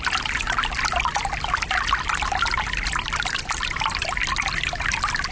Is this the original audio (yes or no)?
yes